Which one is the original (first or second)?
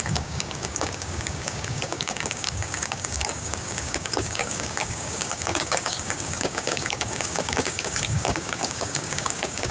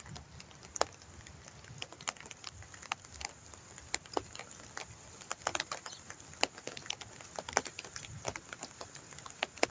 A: second